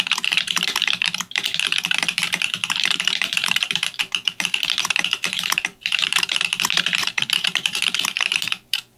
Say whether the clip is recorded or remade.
remade